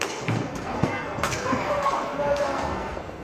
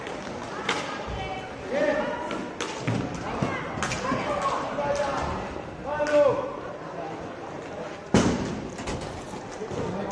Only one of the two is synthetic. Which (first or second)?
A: first